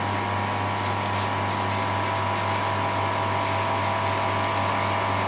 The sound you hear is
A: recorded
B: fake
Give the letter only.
A